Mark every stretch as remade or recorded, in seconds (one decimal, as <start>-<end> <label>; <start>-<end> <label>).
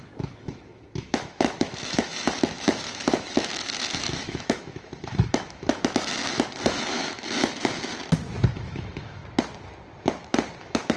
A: 0.0-7.9 remade; 7.9-8.5 recorded; 8.5-9.2 remade; 9.2-10.6 recorded; 10.6-11.0 remade